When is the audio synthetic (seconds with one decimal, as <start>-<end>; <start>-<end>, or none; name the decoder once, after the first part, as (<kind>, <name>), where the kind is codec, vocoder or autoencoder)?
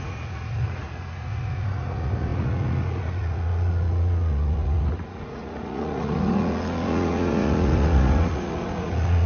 0.0-9.3 (vocoder, Vocos)